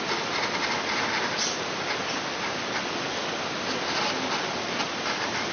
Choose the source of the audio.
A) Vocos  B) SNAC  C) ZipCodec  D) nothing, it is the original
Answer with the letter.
D